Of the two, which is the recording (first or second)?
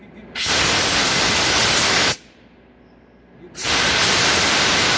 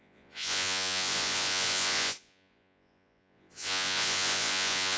first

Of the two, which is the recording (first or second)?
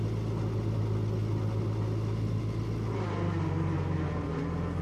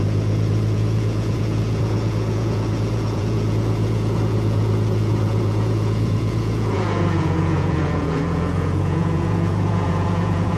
first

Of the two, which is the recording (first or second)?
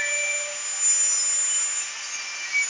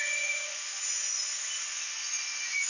first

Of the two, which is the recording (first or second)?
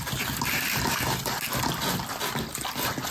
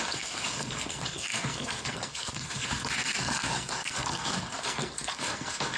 first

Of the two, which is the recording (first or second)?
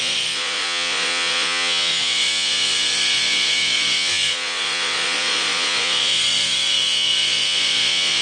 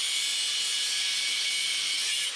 second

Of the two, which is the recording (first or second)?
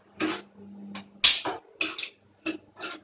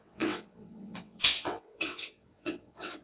first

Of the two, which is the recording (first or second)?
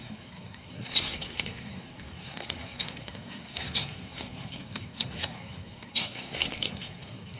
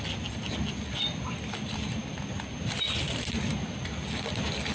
second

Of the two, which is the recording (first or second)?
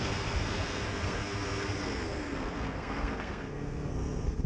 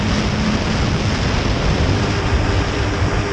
second